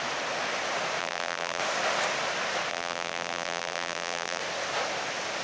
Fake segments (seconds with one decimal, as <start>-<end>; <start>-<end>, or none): 1.0-1.6; 2.7-4.4